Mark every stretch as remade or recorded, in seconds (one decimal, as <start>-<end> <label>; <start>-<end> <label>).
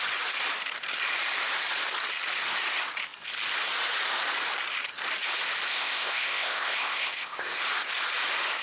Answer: 0.0-5.7 recorded; 5.7-7.6 remade; 7.6-8.6 recorded